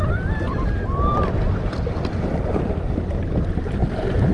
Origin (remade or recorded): remade